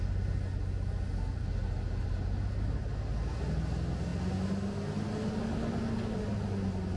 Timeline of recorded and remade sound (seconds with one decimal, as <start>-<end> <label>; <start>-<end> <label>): 0.0-7.0 recorded